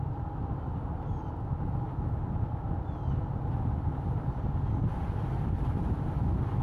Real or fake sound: real